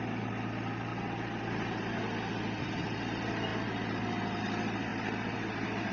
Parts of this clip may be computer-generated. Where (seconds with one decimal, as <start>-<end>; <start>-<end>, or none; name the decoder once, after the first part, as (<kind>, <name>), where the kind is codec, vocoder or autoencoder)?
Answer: none